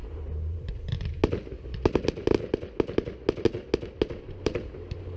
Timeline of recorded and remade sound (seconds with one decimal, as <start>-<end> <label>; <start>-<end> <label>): 0.0-1.2 remade; 1.2-4.2 recorded; 4.2-5.2 remade